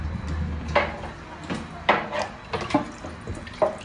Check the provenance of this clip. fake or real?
real